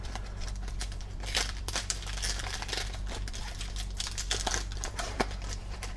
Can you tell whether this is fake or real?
fake